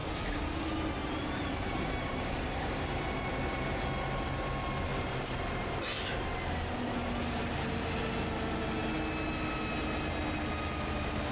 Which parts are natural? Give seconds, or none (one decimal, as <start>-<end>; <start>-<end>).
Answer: 0.0-1.0; 3.3-4.9; 6.2-11.3